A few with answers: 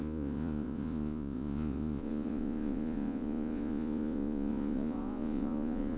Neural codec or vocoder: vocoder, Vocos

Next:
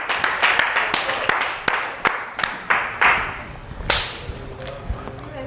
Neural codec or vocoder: none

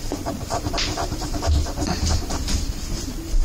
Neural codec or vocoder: vocoder, BigVGAN v2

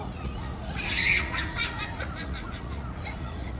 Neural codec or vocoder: vocoder, Vocos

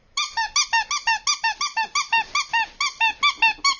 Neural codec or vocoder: none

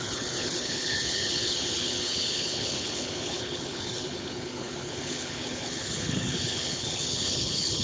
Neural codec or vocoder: codec, HILCodec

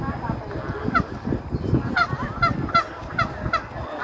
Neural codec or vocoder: none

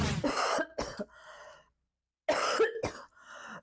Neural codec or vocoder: none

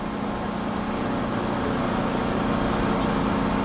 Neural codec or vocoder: none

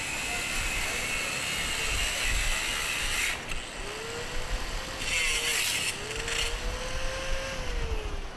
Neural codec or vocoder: none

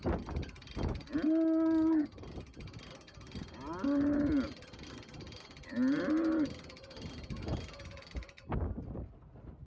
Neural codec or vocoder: none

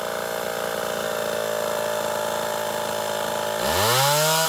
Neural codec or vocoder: none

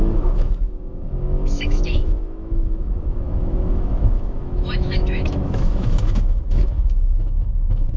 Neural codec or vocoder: autoencoder, DAC-VAE